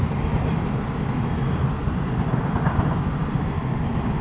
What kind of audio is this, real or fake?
real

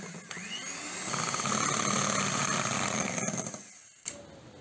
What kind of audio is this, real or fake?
real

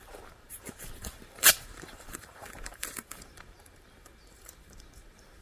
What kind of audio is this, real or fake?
fake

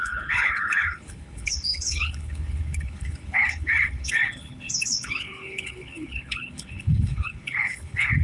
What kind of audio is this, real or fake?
fake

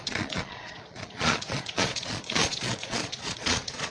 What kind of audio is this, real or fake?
fake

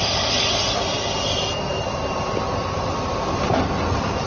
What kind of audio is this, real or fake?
fake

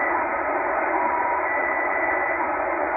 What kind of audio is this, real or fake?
fake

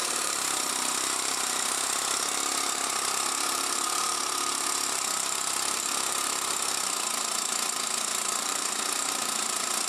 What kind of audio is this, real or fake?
fake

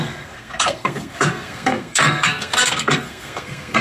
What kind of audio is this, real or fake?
fake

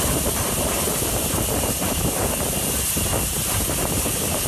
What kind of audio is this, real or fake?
real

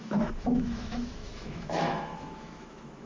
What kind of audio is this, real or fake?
fake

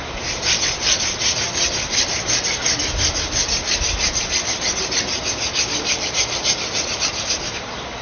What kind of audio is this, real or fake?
fake